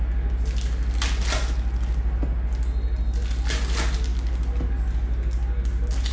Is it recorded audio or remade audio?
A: recorded